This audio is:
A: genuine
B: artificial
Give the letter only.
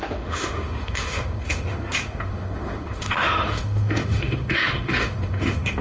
B